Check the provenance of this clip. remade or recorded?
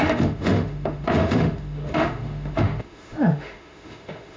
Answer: remade